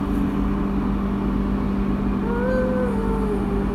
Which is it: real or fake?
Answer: real